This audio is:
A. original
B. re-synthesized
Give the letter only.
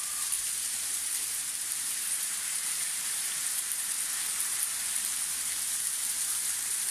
B